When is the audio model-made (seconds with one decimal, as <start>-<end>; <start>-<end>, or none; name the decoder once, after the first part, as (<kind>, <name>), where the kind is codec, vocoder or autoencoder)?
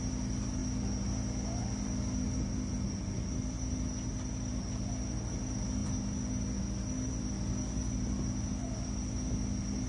none